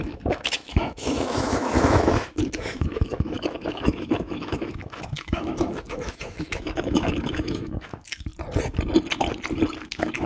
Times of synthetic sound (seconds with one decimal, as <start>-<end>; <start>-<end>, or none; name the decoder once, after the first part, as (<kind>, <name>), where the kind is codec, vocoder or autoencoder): 0.0-8.3 (autoencoder, DAC-VAE); 9.8-10.3